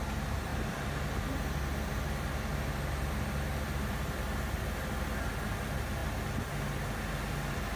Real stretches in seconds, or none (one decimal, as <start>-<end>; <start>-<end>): 0.0-7.8